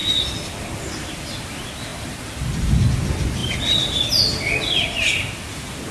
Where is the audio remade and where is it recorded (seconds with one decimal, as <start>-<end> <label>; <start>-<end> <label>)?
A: 0.0-5.9 recorded